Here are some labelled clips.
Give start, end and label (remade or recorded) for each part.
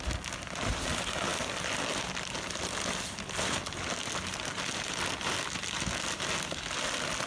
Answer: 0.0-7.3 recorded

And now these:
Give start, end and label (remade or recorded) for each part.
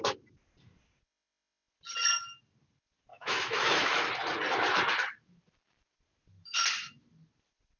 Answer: 0.0-3.1 recorded; 3.1-4.0 remade; 4.0-7.8 recorded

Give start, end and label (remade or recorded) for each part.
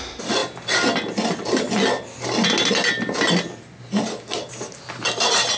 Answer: 0.0-5.6 recorded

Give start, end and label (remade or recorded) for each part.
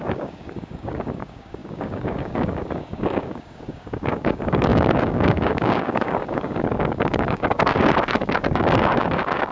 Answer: 0.0-9.5 remade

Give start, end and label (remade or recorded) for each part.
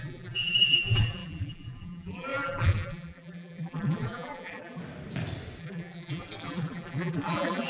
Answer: 0.0-4.8 remade; 4.8-5.6 recorded; 5.6-7.7 remade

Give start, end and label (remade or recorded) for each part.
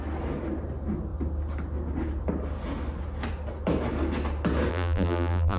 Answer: 0.0-4.7 recorded; 4.7-5.6 remade